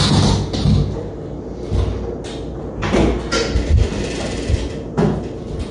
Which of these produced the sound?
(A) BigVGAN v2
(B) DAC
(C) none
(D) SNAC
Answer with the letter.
C